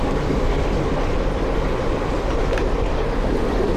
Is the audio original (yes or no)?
yes